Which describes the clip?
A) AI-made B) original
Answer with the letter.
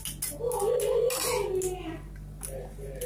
B